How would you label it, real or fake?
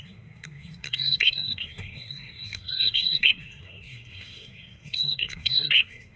fake